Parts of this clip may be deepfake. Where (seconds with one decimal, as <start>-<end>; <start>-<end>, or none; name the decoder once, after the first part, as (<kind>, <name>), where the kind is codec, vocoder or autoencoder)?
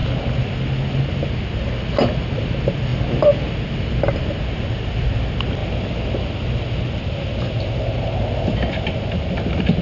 none